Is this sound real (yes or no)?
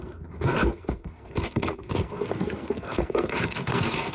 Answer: no